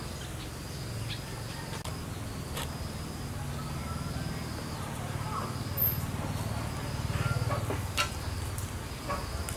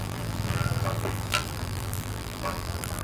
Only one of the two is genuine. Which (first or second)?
first